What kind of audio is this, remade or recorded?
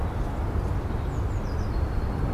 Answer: recorded